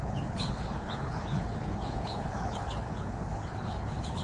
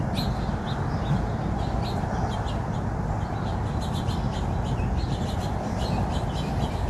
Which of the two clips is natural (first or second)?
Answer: second